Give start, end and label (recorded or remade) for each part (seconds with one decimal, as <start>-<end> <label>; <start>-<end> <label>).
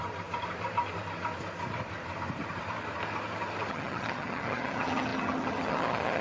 0.0-3.7 recorded; 3.7-6.2 remade